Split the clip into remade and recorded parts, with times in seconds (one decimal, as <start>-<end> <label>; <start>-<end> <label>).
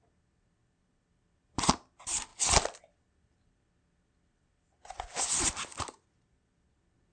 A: 0.0-7.1 recorded